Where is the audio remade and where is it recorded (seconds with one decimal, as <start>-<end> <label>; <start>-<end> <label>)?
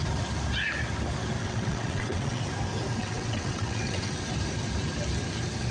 0.0-1.4 recorded; 1.4-2.4 remade; 2.4-3.0 recorded; 3.0-4.2 remade; 4.2-5.7 recorded